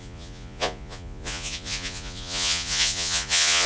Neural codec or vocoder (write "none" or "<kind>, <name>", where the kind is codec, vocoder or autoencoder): vocoder, Vocos